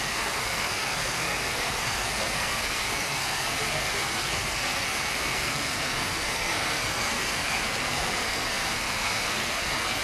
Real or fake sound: fake